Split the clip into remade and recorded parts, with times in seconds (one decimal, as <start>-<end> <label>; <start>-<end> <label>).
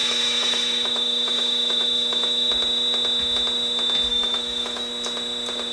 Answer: 0.0-2.5 remade; 2.5-4.1 recorded; 4.1-4.9 remade; 4.9-5.7 recorded